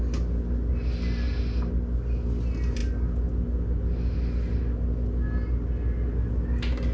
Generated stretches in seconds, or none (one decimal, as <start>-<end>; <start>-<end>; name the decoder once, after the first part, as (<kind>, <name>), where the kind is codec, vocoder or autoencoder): none